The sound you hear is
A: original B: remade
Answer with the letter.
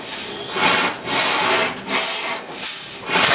A